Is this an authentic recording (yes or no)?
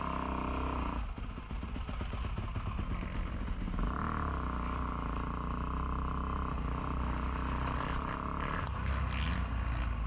yes